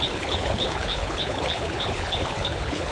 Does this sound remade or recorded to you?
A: remade